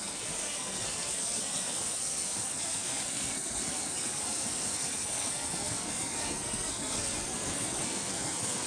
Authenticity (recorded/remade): remade